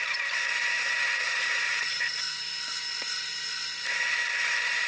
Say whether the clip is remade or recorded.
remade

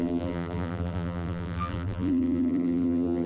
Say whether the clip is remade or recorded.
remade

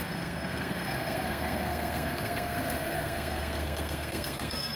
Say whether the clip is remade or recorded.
remade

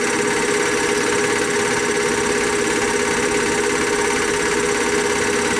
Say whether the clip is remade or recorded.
recorded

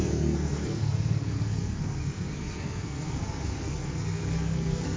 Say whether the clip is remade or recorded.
remade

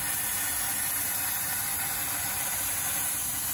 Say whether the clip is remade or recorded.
recorded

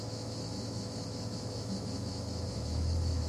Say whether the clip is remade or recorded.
remade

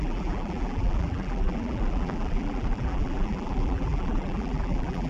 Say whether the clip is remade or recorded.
remade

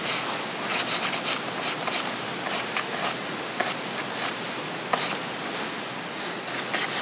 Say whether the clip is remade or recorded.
recorded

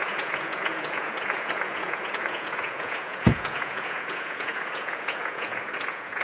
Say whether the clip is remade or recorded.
remade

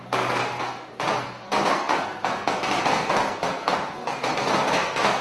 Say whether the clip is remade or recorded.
remade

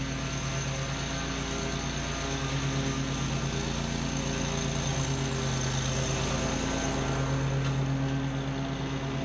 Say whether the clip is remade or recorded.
recorded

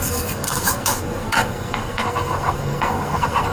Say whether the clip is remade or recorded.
remade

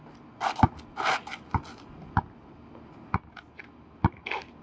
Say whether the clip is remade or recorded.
recorded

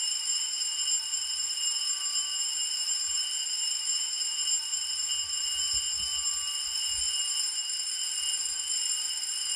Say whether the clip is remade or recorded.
recorded